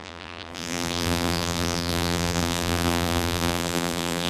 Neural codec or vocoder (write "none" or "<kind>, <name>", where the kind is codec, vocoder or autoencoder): vocoder, BigVGAN v2